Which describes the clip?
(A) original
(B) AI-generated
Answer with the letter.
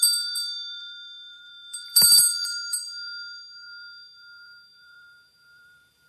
B